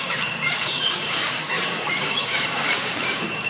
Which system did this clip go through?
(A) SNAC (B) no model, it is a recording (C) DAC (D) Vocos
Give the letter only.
C